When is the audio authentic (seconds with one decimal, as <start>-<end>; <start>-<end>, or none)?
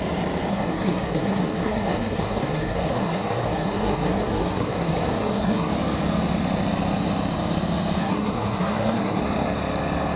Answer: 0.0-0.5; 5.7-8.0; 9.2-10.2